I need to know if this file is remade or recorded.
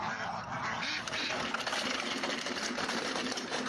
remade